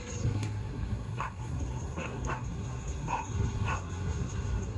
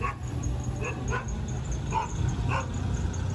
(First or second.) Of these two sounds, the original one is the second